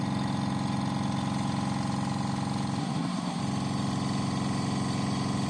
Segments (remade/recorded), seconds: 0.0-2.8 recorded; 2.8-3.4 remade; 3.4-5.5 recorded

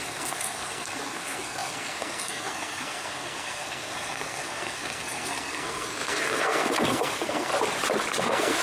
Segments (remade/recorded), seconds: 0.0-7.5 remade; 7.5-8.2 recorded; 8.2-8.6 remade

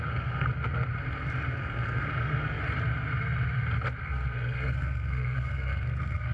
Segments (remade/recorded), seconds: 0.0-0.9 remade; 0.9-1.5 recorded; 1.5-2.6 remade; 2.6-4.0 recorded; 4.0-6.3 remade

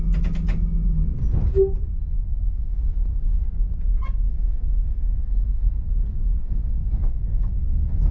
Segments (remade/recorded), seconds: 0.0-2.2 recorded; 2.2-2.8 remade; 2.8-4.3 recorded; 4.3-5.9 remade; 5.9-6.4 recorded; 6.4-8.1 remade

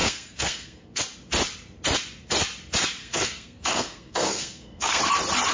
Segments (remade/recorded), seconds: 0.0-1.0 remade; 1.0-3.0 recorded; 3.0-5.0 remade; 5.0-5.5 recorded